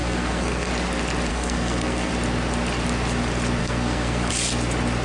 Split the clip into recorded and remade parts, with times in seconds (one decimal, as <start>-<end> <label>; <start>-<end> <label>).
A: 0.0-0.7 remade; 0.7-1.3 recorded; 1.3-2.1 remade; 2.1-3.6 recorded; 3.6-4.3 remade; 4.3-5.0 recorded

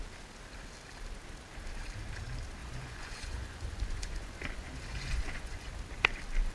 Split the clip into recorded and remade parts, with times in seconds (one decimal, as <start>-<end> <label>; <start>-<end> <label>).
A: 0.0-2.6 recorded; 2.6-5.7 remade; 5.7-6.5 recorded

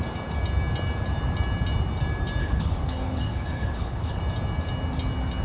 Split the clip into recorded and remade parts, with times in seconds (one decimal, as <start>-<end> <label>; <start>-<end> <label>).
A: 0.0-2.4 recorded; 2.4-4.2 remade; 4.2-5.4 recorded

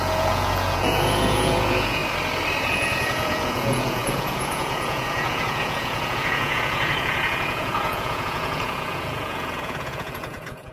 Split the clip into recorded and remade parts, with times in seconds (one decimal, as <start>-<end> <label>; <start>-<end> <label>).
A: 0.0-2.0 remade; 2.0-2.6 recorded; 2.6-10.7 remade

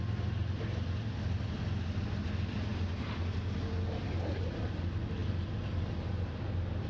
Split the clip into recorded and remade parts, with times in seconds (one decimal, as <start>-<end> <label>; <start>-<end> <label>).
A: 0.0-6.9 recorded

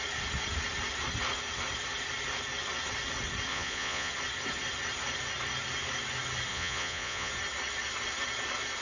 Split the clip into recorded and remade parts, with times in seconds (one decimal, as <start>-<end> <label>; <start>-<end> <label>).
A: 0.0-3.5 recorded; 3.5-4.1 remade; 4.1-6.5 recorded; 6.5-7.3 remade; 7.3-8.8 recorded

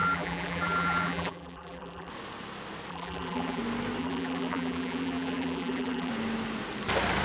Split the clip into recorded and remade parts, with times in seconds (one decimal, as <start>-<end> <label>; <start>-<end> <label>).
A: 0.0-2.1 remade; 2.1-2.9 recorded; 2.9-3.6 remade; 3.6-4.0 recorded; 4.0-6.1 remade; 6.1-7.2 recorded

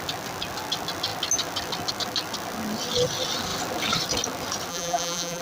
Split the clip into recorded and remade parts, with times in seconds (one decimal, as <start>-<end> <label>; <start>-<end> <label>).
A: 0.0-4.7 recorded; 4.7-5.4 remade